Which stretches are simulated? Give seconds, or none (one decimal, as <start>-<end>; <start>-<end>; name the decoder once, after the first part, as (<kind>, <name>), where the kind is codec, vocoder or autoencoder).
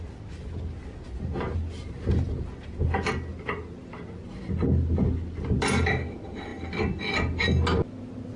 3.3-3.9 (vocoder, BigVGAN v2); 6.5-7.0